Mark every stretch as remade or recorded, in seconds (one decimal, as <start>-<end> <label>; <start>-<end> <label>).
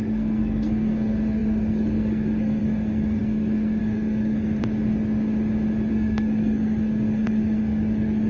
0.0-4.6 remade; 4.6-5.9 recorded; 5.9-8.3 remade